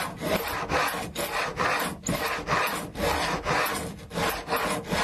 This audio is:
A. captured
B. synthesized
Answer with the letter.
A